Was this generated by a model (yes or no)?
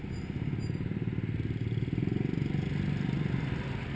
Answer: no